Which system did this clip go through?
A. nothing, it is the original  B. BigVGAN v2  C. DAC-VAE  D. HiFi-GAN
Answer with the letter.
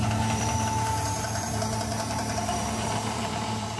B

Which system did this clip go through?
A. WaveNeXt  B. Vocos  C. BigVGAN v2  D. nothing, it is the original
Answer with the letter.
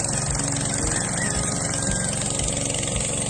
D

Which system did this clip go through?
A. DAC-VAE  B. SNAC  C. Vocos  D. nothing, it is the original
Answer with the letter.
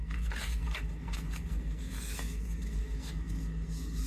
B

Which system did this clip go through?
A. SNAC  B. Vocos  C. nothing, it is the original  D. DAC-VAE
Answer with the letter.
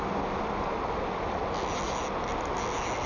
C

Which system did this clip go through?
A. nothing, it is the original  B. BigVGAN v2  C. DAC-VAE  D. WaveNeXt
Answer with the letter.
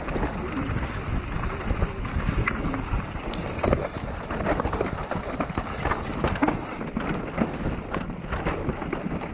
A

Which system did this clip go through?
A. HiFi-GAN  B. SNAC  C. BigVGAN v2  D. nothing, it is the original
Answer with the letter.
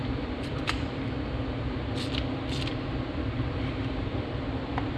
C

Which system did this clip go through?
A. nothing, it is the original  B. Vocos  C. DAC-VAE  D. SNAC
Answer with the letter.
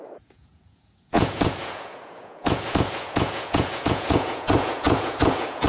B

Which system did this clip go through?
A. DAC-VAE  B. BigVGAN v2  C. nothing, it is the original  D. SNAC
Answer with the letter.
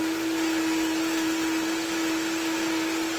C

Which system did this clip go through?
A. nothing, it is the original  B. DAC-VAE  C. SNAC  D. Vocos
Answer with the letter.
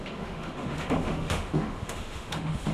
B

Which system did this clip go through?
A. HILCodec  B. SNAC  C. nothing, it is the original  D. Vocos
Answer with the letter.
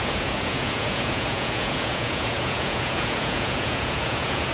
D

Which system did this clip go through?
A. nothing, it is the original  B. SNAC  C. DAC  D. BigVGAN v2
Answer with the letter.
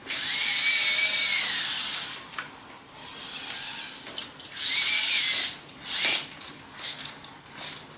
A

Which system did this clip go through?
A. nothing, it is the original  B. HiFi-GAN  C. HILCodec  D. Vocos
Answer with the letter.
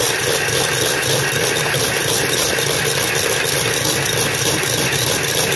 A